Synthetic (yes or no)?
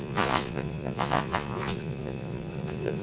yes